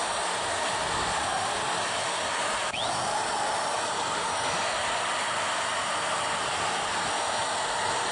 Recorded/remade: recorded